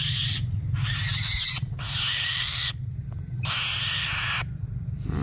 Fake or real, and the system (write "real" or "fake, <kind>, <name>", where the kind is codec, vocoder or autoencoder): real